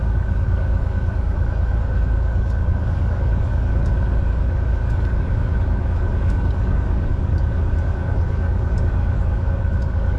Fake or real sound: fake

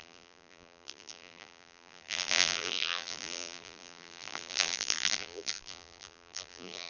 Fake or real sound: fake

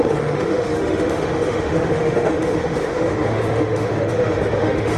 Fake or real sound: fake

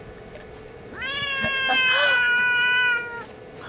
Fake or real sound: real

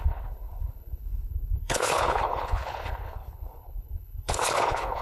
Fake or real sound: fake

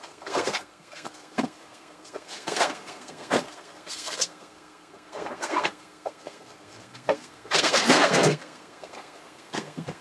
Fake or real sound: fake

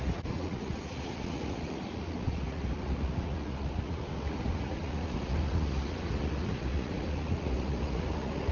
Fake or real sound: fake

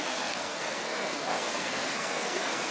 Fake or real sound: fake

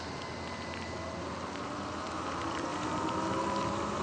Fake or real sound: real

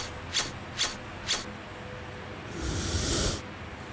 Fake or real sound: real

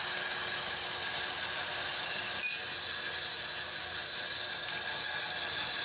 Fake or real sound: real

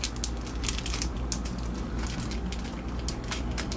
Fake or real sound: real